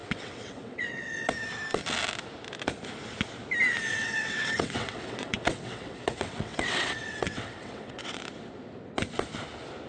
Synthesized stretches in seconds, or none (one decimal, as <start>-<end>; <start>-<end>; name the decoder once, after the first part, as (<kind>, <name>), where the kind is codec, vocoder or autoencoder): 0.0-1.3 (vocoder, WaveNeXt); 3.9-8.2